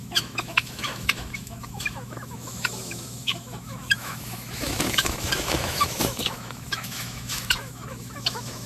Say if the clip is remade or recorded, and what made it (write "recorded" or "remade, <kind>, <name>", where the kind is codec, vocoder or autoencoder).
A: remade, autoencoder, DAC-VAE